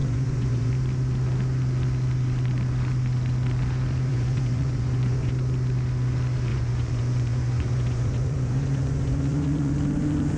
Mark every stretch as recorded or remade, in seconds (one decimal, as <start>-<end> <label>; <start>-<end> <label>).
0.0-0.7 remade; 0.7-4.1 recorded; 4.1-5.3 remade; 5.3-6.5 recorded; 6.5-9.7 remade; 9.7-10.4 recorded